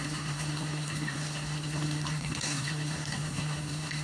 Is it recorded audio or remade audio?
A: remade